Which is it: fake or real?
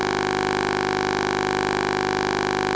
real